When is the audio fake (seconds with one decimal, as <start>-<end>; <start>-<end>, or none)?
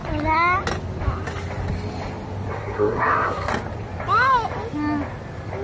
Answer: 2.5-3.5